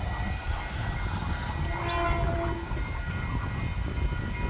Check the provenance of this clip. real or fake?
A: real